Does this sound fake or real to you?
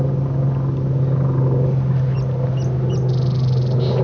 real